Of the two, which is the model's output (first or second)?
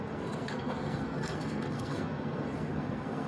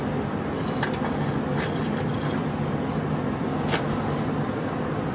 first